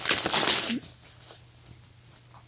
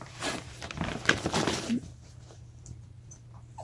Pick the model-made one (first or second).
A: second